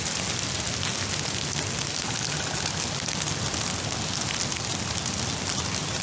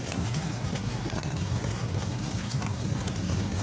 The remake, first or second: second